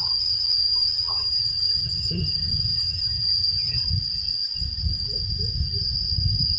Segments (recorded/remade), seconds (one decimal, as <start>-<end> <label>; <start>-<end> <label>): 0.0-3.8 remade; 3.8-6.6 recorded